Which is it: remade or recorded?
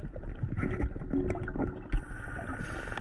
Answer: recorded